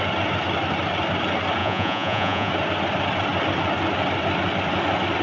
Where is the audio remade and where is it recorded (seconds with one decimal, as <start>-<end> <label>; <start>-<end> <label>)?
0.0-1.6 recorded; 1.6-2.5 remade; 2.5-5.2 recorded